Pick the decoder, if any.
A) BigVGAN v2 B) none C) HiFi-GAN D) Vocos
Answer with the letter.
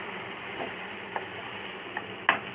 B